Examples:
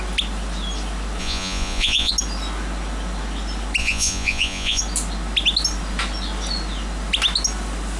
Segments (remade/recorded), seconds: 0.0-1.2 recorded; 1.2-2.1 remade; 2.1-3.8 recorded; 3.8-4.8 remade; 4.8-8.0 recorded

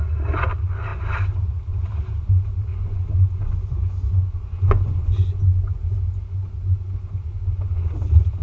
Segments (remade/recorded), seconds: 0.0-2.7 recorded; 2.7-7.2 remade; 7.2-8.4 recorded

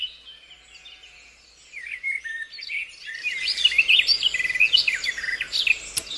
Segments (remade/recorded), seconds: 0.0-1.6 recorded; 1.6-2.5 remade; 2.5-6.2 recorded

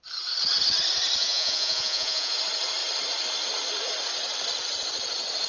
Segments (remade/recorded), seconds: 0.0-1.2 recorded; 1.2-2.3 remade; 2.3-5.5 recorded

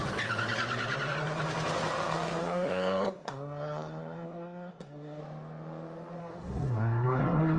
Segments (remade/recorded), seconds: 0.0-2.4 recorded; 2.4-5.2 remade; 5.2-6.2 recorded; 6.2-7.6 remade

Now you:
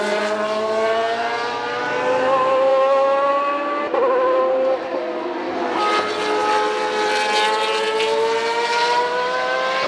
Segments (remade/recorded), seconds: 0.0-2.7 recorded; 2.7-3.3 remade; 3.3-9.9 recorded

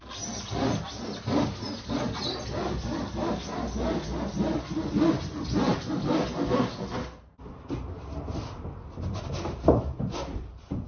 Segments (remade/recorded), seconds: 0.0-10.9 recorded

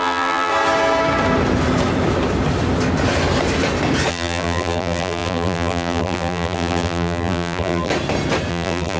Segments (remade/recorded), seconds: 0.0-0.5 remade; 0.5-4.1 recorded; 4.1-7.9 remade; 7.9-8.5 recorded; 8.5-9.0 remade